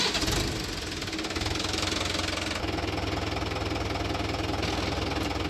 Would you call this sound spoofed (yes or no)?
no